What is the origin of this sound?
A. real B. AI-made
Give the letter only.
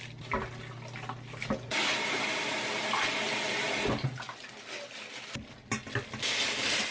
A